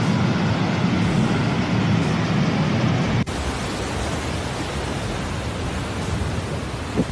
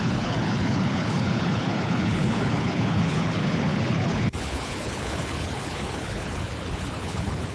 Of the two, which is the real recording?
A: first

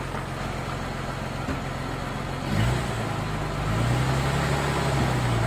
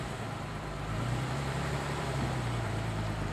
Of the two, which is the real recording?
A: first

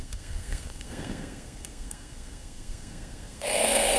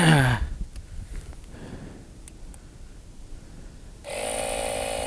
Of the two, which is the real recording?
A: second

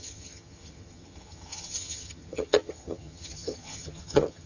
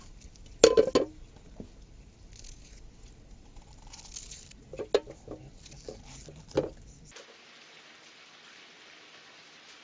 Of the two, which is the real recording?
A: second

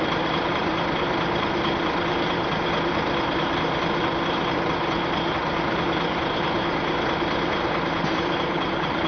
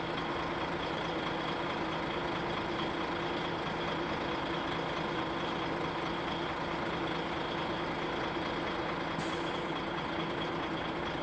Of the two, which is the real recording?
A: second